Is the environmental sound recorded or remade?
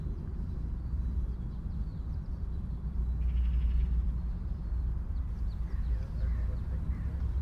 recorded